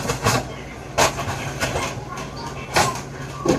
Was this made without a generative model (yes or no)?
yes